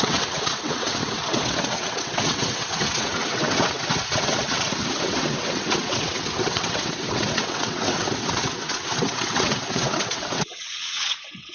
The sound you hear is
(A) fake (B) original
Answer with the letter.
A